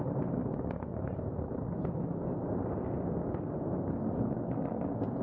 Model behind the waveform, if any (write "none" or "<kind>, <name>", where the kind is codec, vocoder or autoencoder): none